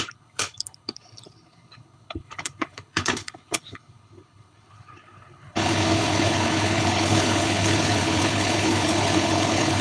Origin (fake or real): fake